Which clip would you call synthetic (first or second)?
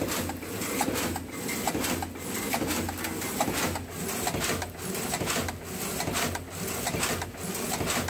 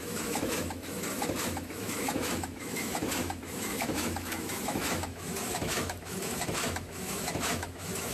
second